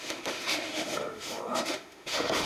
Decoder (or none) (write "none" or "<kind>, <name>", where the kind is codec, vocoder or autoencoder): autoencoder, DAC-VAE